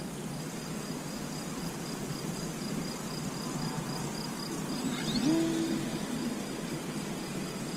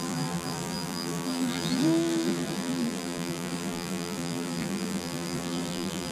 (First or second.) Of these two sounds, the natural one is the first